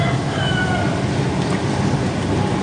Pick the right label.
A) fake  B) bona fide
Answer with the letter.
A